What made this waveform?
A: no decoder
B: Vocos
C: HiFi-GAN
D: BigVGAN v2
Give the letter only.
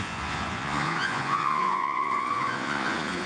B